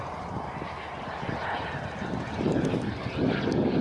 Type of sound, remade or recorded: recorded